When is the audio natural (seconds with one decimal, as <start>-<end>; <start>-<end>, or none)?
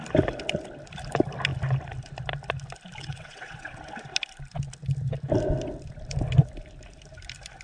0.0-3.0; 3.8-7.6